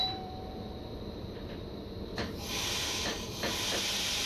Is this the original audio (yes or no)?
no